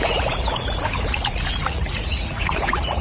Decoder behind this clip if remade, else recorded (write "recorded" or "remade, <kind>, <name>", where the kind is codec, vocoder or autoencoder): remade, vocoder, Vocos